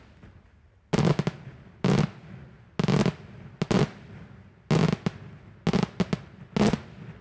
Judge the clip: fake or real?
real